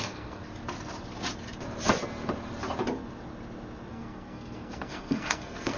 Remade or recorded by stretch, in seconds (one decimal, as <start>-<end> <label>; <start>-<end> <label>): 0.0-0.4 remade; 0.4-3.9 recorded; 3.9-5.8 remade